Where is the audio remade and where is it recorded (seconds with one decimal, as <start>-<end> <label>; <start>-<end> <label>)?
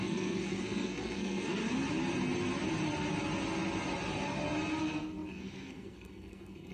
0.0-1.6 remade; 1.6-4.8 recorded; 4.8-6.7 remade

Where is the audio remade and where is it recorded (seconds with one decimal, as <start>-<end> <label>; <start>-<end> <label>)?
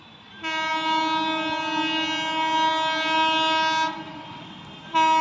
0.0-5.2 recorded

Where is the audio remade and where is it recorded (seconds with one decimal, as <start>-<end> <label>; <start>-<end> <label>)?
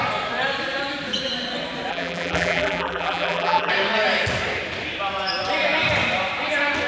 0.0-1.9 recorded; 1.9-3.7 remade; 3.7-6.9 recorded